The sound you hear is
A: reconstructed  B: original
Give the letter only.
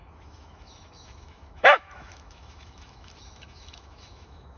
A